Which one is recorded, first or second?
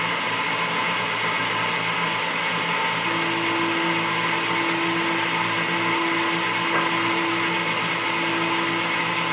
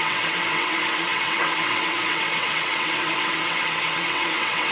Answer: first